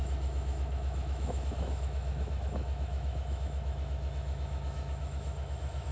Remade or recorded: remade